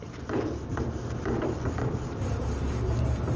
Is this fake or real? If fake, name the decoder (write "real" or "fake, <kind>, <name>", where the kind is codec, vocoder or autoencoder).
fake, vocoder, BigVGAN v2